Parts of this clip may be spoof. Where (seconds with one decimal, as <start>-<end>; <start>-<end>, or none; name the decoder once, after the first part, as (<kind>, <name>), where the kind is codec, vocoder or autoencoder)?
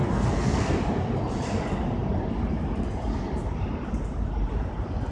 0.0-0.8 (codec, SNAC)